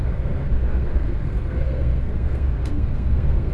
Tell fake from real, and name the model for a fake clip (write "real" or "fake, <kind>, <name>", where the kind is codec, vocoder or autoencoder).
fake, codec, SNAC